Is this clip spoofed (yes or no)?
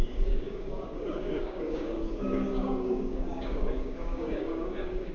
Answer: yes